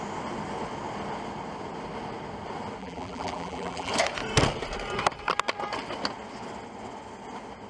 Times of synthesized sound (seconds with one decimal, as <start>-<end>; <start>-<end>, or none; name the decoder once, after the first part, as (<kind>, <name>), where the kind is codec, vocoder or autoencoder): 2.8-3.9 (vocoder, BigVGAN v2)